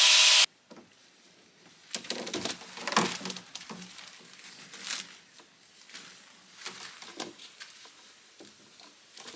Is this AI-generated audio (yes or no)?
no